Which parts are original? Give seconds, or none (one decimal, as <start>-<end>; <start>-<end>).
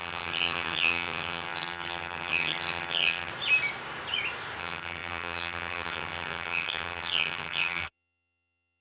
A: 3.3-4.6